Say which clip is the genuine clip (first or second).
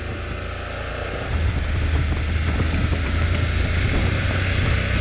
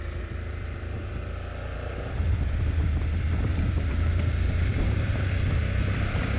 first